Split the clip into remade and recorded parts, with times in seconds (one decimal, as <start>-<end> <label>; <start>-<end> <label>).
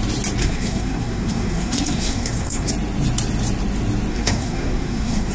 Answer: 0.0-0.4 recorded; 0.4-2.7 remade; 2.7-4.1 recorded; 4.1-5.3 remade